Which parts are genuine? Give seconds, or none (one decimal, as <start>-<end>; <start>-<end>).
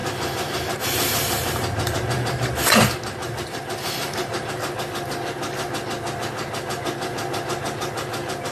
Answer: 4.5-8.5